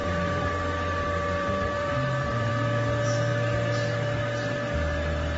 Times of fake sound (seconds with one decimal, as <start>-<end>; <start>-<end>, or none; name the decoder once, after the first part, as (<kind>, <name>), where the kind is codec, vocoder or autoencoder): 0.0-2.5 (vocoder, BigVGAN v2)